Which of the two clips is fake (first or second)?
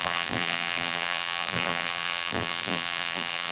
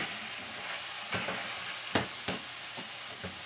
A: first